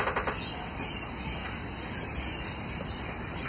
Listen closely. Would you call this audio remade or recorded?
recorded